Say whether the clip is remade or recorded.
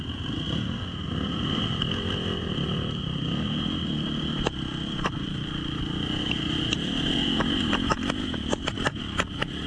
recorded